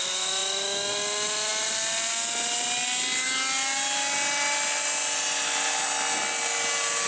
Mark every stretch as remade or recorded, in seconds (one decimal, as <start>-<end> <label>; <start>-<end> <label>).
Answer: 0.0-7.1 recorded